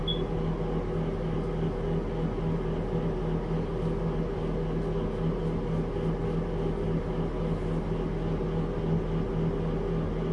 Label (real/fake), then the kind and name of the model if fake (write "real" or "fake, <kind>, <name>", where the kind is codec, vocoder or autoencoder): real